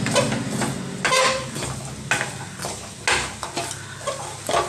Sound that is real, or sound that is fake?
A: real